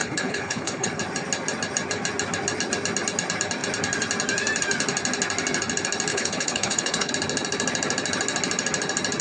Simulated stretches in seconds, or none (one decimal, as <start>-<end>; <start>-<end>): 0.0-1.0; 6.1-7.1